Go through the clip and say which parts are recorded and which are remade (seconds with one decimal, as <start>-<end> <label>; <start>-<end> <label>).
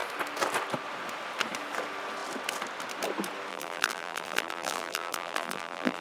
0.0-3.5 recorded; 3.5-6.0 remade